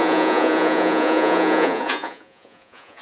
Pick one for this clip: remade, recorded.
remade